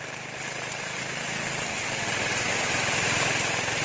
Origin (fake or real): real